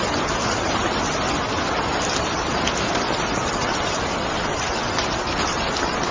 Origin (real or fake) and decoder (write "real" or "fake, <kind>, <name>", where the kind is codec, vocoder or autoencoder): real